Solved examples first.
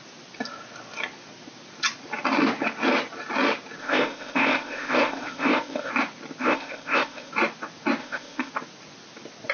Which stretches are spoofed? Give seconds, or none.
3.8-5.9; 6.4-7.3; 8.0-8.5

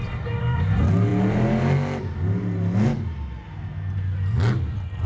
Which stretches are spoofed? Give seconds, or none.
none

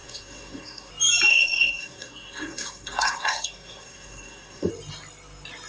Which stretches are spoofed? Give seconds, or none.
0.0-0.9; 1.3-4.7